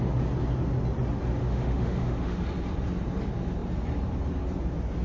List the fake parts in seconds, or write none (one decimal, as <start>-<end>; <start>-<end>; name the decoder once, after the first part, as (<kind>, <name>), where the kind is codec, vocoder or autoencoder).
1.4-2.4 (autoencoder, DAC-VAE)